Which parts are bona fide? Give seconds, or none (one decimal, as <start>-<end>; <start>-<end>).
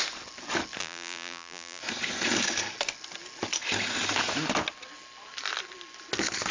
0.0-0.8; 1.8-6.5